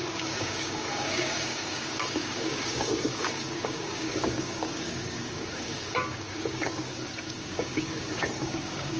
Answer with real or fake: fake